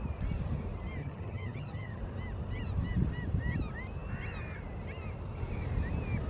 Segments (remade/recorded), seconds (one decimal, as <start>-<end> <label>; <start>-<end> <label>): 0.0-1.0 recorded; 1.0-2.0 remade; 2.0-6.3 recorded